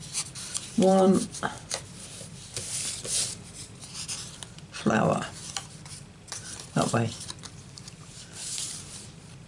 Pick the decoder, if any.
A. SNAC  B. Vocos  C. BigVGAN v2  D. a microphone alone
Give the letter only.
C